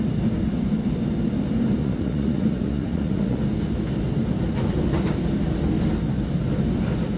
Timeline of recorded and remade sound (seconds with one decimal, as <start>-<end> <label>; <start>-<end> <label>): 0.0-1.8 recorded; 1.8-3.4 remade; 3.4-7.2 recorded

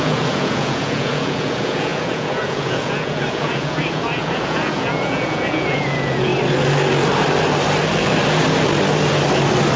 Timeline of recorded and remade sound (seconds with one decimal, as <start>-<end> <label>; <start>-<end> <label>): 0.0-6.3 remade; 6.3-9.8 recorded

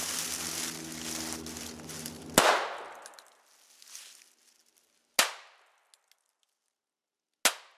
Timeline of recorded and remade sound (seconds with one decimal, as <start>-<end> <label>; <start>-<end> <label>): 0.0-7.8 recorded

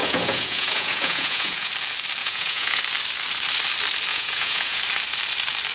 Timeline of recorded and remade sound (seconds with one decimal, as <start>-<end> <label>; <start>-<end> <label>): 0.0-1.7 remade; 1.7-2.2 recorded; 2.2-2.8 remade; 2.8-4.1 recorded; 4.1-4.8 remade; 4.8-5.7 recorded

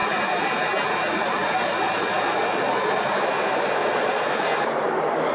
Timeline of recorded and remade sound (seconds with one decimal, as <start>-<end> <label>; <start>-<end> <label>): 0.0-3.8 recorded; 3.8-4.3 remade; 4.3-5.3 recorded

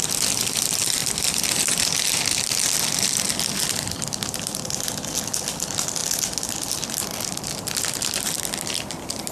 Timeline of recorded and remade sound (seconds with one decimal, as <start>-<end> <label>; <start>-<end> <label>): 0.0-9.3 recorded